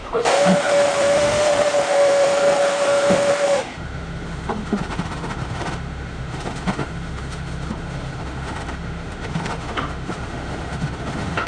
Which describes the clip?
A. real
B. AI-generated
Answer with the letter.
B